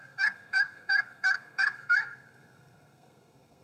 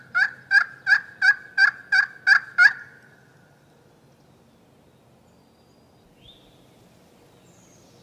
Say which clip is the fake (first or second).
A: first